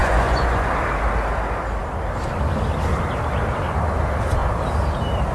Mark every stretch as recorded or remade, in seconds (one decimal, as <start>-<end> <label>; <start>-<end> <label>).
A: 0.0-0.7 remade; 0.7-5.3 recorded